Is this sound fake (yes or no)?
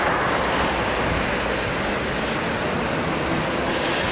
no